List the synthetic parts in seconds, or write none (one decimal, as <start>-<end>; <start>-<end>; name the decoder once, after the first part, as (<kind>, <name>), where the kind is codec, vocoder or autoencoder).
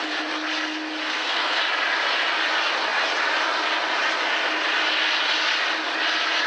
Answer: 1.0-1.6 (codec, SNAC)